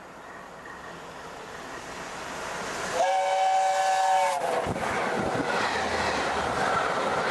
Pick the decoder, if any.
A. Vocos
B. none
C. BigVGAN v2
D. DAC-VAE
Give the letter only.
B